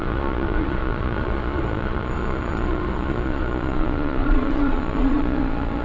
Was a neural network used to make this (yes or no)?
yes